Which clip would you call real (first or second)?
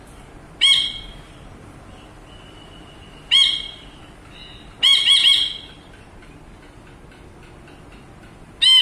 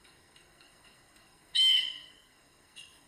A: first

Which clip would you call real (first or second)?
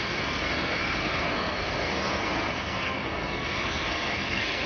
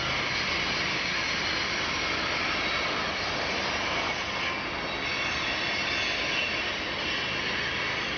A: second